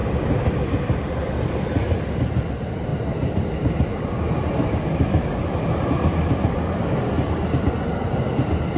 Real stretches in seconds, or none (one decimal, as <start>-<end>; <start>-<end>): 0.5-8.8